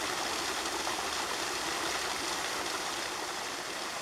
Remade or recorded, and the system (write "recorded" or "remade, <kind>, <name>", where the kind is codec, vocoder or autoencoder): recorded